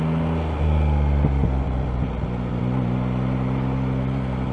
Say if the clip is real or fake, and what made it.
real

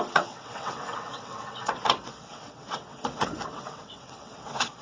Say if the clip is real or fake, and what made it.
fake, vocoder, WaveNeXt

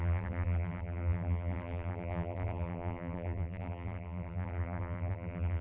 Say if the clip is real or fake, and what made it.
fake, vocoder, BigVGAN v2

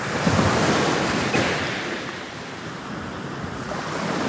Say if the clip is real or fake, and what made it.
real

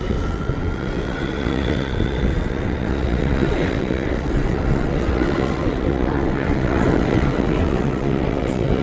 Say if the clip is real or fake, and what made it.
fake, vocoder, WaveNeXt